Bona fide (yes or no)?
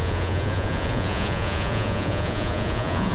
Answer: no